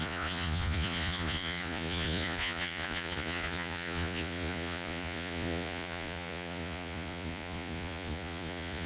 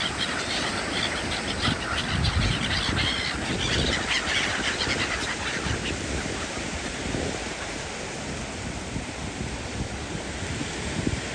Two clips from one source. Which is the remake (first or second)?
first